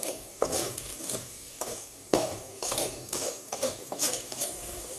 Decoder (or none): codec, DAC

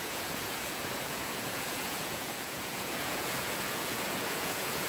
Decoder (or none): vocoder, Vocos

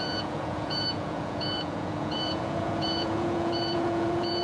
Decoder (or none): vocoder, Vocos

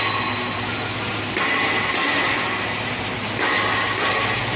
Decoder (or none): none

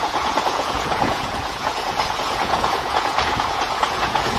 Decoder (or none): vocoder, Vocos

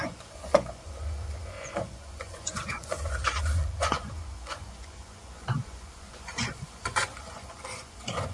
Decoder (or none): vocoder, Vocos